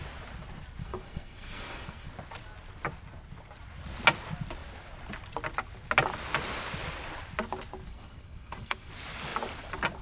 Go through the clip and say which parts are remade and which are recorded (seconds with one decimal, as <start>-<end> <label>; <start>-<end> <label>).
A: 0.0-0.8 recorded; 0.8-2.1 remade; 2.1-7.9 recorded; 7.9-8.9 remade; 8.9-10.0 recorded